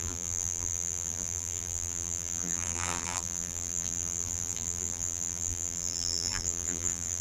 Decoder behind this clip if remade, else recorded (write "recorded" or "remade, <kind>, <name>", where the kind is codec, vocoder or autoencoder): remade, vocoder, BigVGAN v2